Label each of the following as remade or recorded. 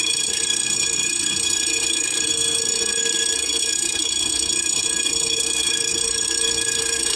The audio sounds remade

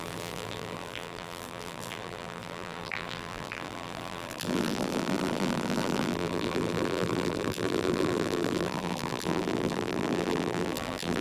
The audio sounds remade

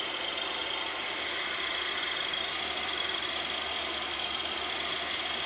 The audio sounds recorded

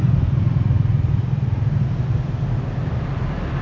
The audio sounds recorded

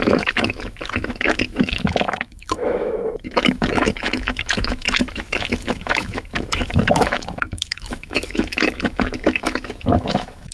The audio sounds remade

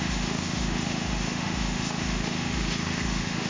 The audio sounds remade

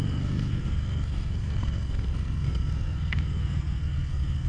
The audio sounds remade